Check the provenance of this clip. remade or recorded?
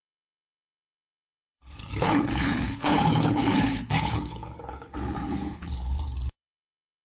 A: remade